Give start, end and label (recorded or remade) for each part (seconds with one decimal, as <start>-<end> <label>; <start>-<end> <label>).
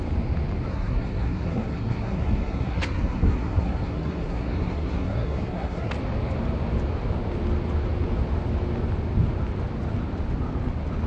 0.0-0.7 recorded; 0.7-5.9 remade; 5.9-11.1 recorded